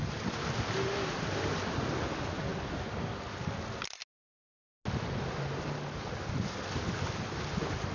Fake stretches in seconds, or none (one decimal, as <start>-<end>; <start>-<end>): none